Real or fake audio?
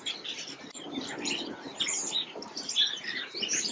fake